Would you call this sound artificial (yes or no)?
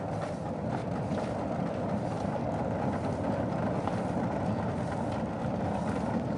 no